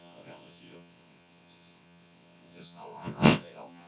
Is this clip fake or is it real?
fake